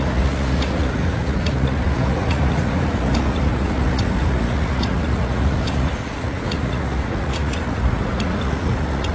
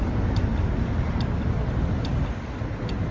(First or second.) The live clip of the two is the second